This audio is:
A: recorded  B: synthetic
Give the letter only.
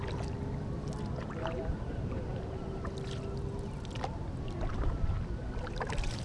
A